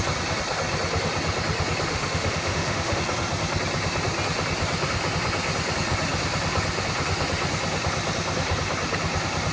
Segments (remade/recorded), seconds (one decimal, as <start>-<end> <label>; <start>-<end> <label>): 0.0-1.9 recorded; 1.9-3.0 remade; 3.0-9.5 recorded